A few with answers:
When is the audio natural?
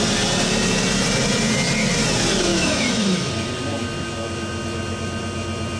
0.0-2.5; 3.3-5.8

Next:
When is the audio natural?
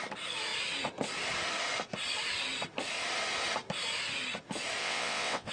0.0-4.8